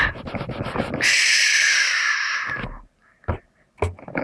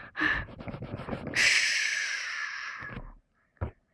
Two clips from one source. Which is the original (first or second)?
first